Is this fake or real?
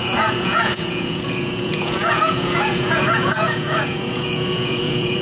fake